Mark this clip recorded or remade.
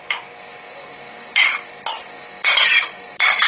recorded